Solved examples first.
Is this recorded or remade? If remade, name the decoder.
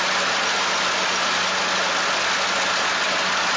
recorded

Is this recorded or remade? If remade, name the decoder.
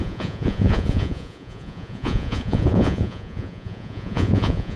remade, vocoder, Vocos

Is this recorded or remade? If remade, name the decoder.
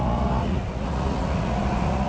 remade, vocoder, Vocos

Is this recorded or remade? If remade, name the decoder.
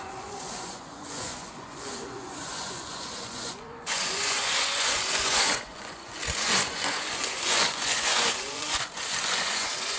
remade, vocoder, Vocos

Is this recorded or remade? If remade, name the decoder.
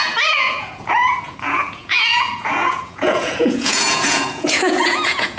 remade, vocoder, Vocos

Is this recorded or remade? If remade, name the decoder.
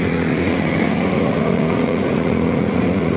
remade, vocoder, Vocos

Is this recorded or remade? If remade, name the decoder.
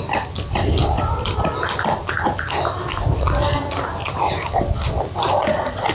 recorded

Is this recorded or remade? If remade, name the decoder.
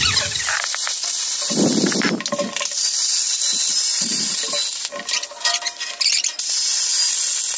recorded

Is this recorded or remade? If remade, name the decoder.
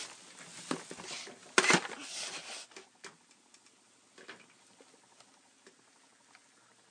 recorded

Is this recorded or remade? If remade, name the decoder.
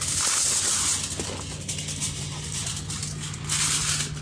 recorded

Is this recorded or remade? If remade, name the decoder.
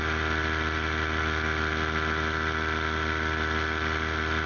recorded